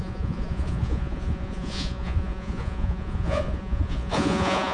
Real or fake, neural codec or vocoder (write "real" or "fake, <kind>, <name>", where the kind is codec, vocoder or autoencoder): fake, vocoder, Vocos